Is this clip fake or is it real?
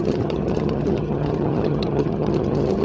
fake